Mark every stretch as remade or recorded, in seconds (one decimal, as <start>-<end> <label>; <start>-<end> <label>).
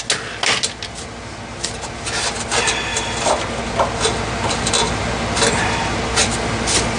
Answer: 0.0-7.0 recorded